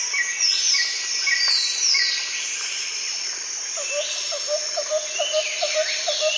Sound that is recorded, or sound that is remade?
recorded